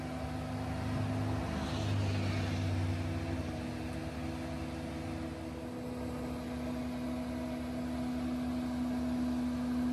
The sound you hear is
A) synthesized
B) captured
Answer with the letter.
B